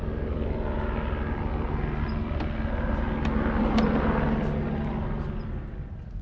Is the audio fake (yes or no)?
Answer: no